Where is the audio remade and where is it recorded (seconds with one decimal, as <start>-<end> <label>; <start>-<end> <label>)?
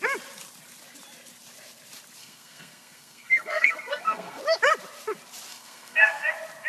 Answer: 0.0-2.2 recorded; 2.2-4.4 remade; 4.4-5.5 recorded; 5.5-6.3 remade; 6.3-6.7 recorded